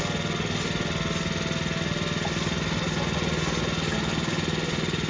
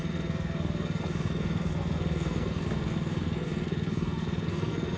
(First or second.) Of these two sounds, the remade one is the second